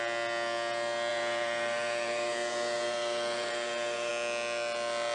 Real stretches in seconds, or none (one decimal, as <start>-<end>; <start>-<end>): 0.0-1.1; 4.1-5.1